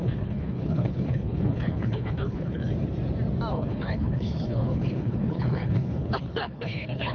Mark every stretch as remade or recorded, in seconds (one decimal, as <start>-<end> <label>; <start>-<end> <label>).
0.0-2.6 remade; 2.6-3.5 recorded; 3.5-7.1 remade